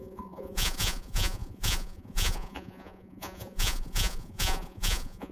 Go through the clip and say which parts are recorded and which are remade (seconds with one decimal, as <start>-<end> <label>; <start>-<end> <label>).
0.0-5.3 remade

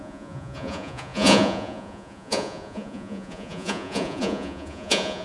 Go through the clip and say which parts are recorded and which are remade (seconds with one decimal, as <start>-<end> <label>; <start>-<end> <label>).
0.0-5.2 remade

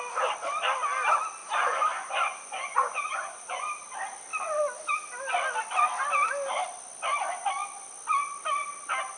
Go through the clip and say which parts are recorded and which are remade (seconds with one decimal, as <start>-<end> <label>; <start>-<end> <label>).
0.0-1.4 recorded; 1.4-3.7 remade; 3.7-9.2 recorded

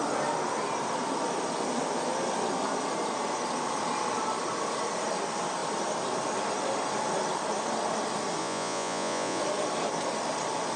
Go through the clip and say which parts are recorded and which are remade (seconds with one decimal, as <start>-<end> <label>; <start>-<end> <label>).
0.0-8.4 recorded; 8.4-9.4 remade; 9.4-10.8 recorded

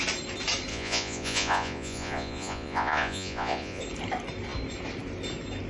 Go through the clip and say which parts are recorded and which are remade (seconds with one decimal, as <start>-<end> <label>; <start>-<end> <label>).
0.0-0.7 recorded; 0.7-3.8 remade; 3.8-5.7 recorded

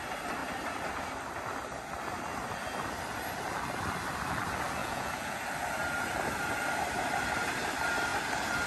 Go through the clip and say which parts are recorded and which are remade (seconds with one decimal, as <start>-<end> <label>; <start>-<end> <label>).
0.0-4.8 recorded; 4.8-5.4 remade; 5.4-8.7 recorded

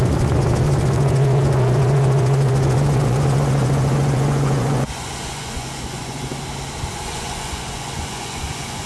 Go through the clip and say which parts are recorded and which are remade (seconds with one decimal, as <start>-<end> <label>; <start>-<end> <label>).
0.0-6.3 remade; 6.3-6.9 recorded; 6.9-8.9 remade

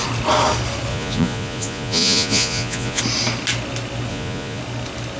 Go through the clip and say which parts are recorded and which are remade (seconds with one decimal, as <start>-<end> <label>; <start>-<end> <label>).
0.0-0.9 recorded; 0.9-3.0 remade; 3.0-4.1 recorded; 4.1-4.6 remade; 4.6-5.2 recorded